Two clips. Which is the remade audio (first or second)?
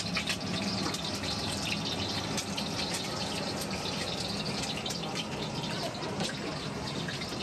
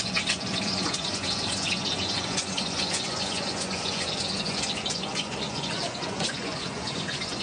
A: second